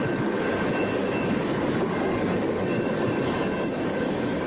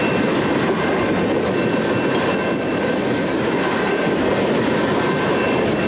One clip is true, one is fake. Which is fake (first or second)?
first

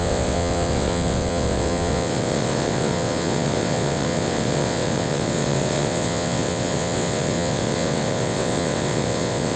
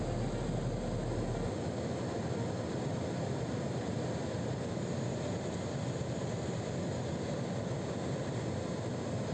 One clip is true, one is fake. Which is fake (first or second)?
first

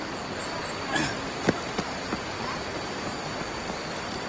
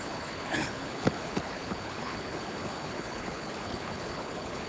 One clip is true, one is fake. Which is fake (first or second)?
second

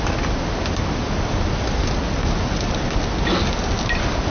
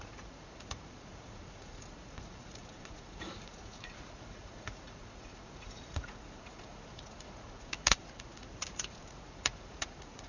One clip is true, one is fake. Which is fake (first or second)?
second